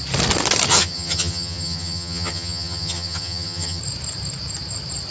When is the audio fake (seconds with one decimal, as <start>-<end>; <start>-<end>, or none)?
0.7-3.8